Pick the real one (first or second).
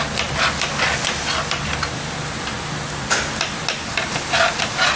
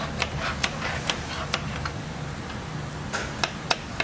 first